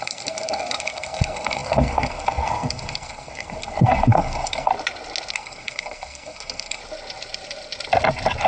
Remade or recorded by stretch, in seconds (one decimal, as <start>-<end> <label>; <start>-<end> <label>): 0.0-4.7 remade; 4.7-5.3 recorded; 5.3-6.8 remade; 6.8-8.5 recorded